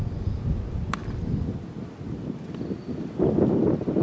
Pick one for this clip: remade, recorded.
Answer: recorded